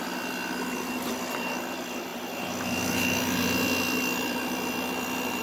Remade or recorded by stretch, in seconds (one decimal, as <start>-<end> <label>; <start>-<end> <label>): 0.0-5.4 recorded